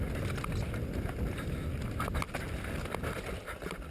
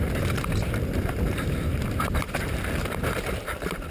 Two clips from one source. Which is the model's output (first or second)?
second